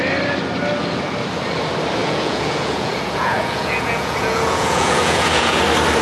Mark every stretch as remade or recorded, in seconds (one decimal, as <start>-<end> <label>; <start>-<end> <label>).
0.0-2.0 recorded; 2.0-5.6 remade; 5.6-6.0 recorded